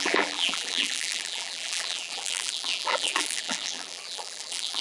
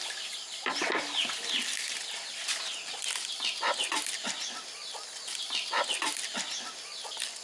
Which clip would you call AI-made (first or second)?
first